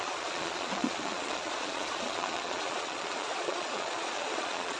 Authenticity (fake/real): fake